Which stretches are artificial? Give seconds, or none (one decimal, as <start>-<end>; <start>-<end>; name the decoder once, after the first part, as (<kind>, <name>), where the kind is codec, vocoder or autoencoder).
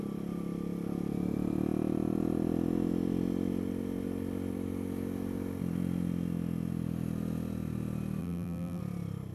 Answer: 8.2-8.8 (vocoder, BigVGAN v2)